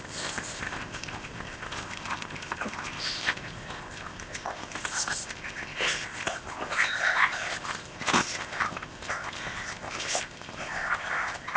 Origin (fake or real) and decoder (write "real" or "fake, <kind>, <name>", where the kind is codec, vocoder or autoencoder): fake, codec, ZipCodec